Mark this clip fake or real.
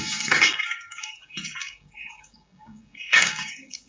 fake